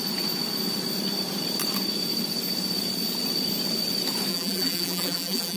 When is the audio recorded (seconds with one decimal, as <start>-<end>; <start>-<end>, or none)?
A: 0.0-4.3